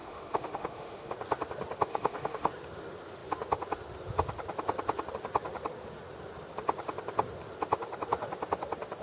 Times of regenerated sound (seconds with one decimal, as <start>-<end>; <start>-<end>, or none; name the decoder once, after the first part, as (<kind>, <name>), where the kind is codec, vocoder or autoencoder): 0.0-1.1 (autoencoder, DAC-VAE); 1.9-2.5